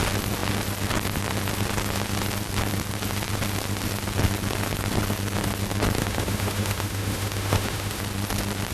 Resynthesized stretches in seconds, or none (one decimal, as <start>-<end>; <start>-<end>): 6.0-8.0